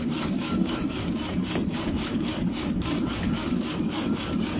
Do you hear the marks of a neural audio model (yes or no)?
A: yes